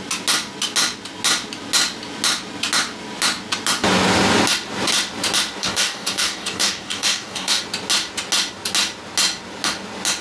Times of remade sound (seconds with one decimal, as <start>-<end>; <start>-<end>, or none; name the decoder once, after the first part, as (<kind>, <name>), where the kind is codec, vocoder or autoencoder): 5.6-7.6 (codec, DAC)